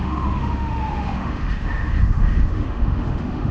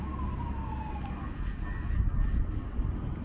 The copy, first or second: first